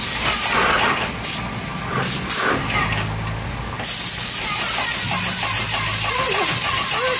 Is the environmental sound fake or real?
real